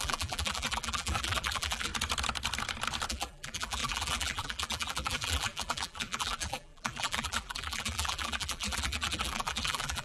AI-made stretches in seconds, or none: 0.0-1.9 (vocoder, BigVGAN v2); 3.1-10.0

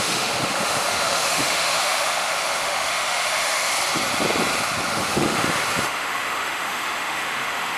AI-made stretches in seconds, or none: 0.0-3.7 (autoencoder, DAC-VAE); 4.9-7.8

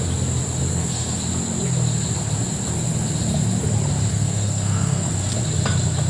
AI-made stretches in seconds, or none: 0.7-1.2 (codec, SNAC); 4.1-5.1

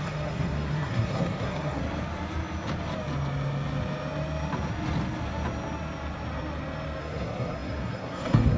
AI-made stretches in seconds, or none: 0.0-1.8 (codec, SNAC); 7.0-8.6

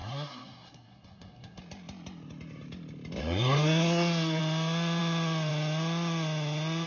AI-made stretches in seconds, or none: 0.0-1.6 (codec, SNAC); 3.2-4.4